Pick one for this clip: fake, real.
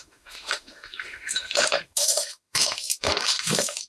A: fake